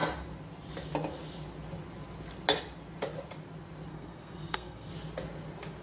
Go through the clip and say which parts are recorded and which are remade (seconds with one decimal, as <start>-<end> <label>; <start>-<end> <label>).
0.0-3.9 recorded; 3.9-4.9 remade; 4.9-5.8 recorded